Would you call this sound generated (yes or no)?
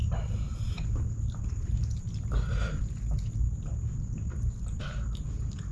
no